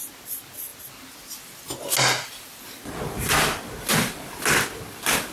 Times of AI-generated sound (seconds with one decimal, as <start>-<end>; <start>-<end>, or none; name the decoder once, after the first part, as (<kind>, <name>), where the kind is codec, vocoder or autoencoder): none